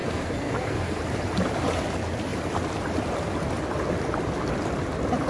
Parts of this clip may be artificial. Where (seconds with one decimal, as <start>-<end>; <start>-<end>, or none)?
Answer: 0.0-1.0